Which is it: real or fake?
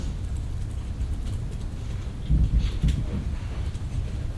real